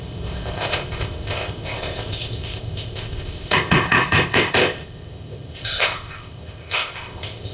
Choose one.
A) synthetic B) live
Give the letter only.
A